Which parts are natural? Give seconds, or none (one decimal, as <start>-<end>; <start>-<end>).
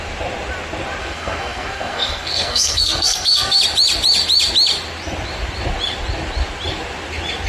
0.0-1.0; 3.6-7.5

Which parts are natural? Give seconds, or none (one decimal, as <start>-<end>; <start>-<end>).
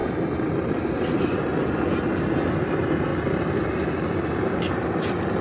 1.5-2.6; 3.1-4.4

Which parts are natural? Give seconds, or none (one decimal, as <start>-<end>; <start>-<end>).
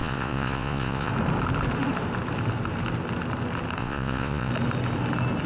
1.1-3.8; 4.5-5.5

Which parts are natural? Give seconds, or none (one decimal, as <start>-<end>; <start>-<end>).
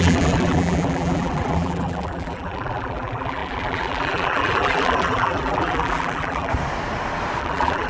6.5-7.4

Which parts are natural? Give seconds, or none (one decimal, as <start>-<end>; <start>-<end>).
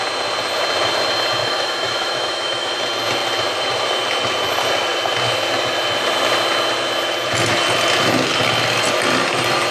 0.0-1.4; 2.7-9.7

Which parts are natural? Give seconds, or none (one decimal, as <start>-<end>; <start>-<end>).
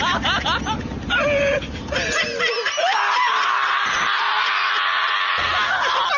0.0-6.2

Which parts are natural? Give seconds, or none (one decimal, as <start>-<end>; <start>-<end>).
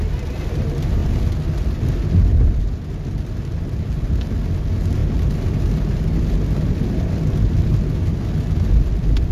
0.0-9.3